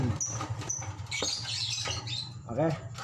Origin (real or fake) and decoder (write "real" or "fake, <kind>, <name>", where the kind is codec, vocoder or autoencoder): real